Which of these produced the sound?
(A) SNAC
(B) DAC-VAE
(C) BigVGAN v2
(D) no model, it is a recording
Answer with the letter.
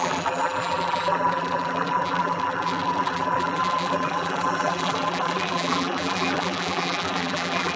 C